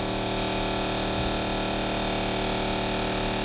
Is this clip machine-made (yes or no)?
no